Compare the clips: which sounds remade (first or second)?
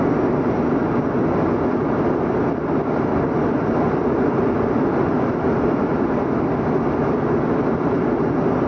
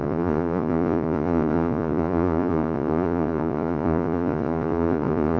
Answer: second